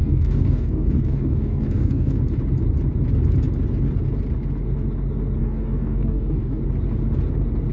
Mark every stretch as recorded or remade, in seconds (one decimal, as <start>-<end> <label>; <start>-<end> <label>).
0.0-2.2 remade; 2.2-5.4 recorded; 5.4-6.6 remade; 6.6-7.7 recorded